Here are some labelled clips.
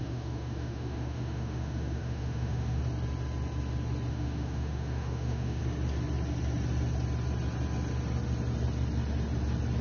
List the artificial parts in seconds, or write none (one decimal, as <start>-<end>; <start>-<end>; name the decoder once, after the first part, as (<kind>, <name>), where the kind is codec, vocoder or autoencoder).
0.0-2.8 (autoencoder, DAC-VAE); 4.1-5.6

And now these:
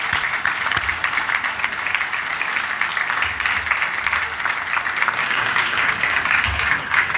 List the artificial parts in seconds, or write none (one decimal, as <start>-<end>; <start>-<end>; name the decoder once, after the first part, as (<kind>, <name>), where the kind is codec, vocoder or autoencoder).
5.2-7.2 (codec, DAC)

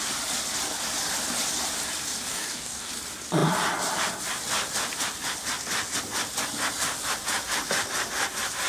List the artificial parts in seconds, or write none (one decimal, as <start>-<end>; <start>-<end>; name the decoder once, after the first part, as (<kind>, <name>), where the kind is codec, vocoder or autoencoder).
2.3-2.9 (codec, DAC)